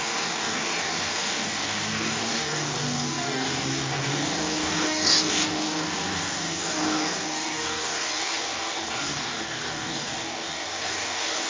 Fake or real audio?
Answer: fake